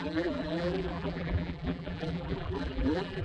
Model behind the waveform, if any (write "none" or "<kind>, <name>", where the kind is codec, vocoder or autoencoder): vocoder, BigVGAN v2